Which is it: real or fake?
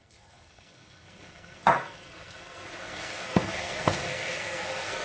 fake